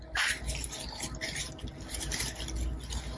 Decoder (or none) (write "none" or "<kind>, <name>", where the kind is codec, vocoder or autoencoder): none